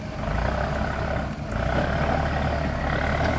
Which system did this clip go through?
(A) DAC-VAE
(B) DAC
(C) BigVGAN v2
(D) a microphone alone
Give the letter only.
D